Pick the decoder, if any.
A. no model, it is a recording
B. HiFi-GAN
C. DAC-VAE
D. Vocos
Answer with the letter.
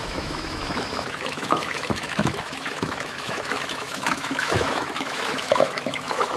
C